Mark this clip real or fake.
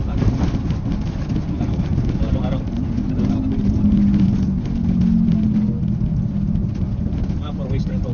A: real